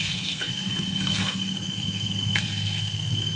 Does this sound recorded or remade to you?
remade